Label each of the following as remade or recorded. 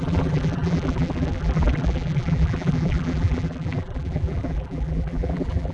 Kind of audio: remade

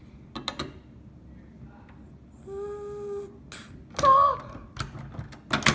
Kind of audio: recorded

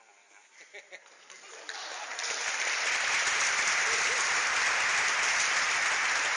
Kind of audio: remade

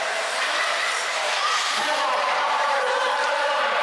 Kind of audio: remade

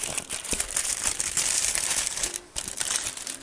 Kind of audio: remade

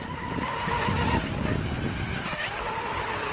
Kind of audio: recorded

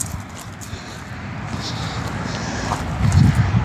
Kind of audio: recorded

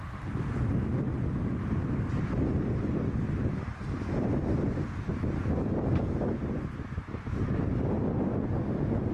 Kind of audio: recorded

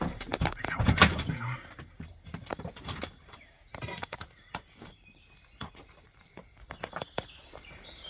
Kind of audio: remade